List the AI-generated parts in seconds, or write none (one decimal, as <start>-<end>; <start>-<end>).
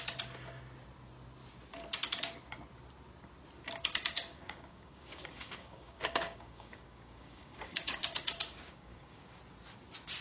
4.3-9.4